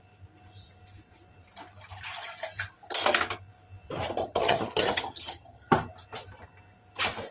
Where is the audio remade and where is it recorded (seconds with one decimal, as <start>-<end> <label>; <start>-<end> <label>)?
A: 0.0-4.2 recorded; 4.2-5.7 remade; 5.7-7.3 recorded